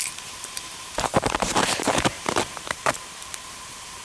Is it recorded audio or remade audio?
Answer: remade